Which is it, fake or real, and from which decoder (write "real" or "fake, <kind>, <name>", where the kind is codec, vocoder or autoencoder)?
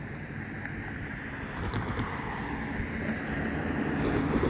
real